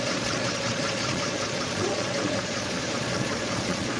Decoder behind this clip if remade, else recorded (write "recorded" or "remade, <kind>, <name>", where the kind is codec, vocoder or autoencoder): remade, vocoder, Vocos